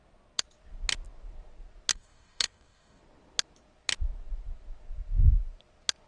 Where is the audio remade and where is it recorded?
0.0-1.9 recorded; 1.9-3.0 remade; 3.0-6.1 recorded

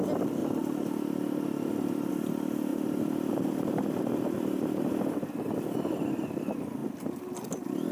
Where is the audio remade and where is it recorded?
0.0-2.7 recorded; 2.7-4.9 remade; 4.9-7.9 recorded

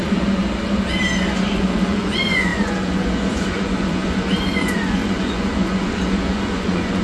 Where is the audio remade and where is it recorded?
0.0-0.4 remade; 0.4-1.5 recorded; 1.5-7.0 remade

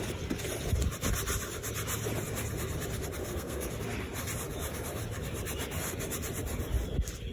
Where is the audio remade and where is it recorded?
0.0-3.2 recorded; 3.2-3.7 remade; 3.7-7.3 recorded

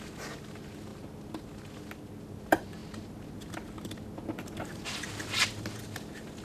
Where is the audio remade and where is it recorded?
0.0-6.4 recorded